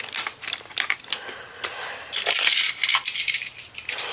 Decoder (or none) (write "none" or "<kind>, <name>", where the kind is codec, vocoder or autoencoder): none